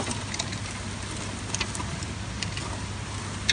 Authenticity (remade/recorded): recorded